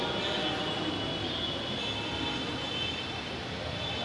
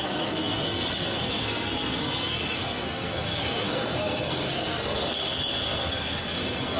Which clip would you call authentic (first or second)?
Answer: first